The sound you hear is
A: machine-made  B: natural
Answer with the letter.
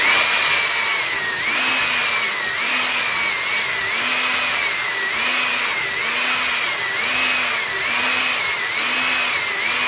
B